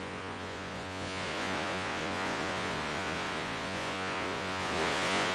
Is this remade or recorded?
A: remade